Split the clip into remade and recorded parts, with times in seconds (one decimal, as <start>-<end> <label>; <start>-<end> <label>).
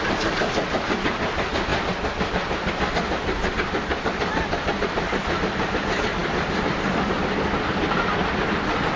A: 0.0-9.0 recorded